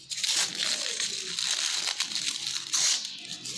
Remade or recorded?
recorded